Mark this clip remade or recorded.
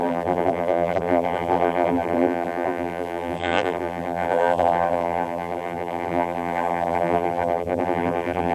remade